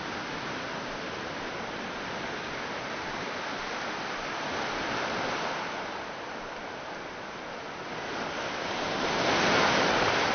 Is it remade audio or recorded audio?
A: recorded